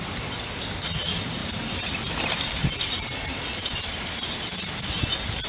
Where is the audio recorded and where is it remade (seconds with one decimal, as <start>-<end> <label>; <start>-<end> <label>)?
0.0-5.5 recorded